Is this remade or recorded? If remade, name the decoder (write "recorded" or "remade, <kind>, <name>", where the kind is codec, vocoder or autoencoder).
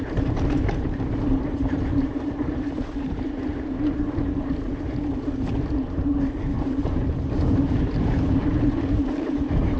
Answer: remade, vocoder, BigVGAN v2